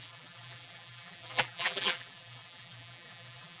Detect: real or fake fake